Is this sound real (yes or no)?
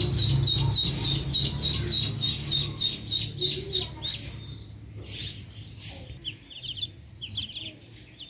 yes